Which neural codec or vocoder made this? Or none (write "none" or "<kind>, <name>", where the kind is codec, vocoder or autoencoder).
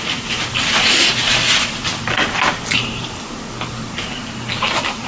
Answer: none